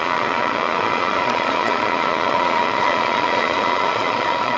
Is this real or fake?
fake